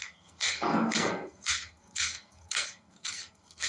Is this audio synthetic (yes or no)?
yes